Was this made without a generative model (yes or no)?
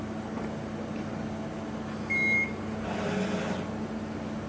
yes